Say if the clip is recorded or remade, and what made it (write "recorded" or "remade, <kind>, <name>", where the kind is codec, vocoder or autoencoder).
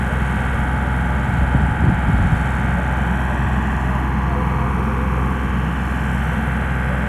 recorded